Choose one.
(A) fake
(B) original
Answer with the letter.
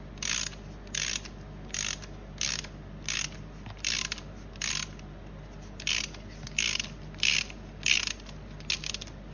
B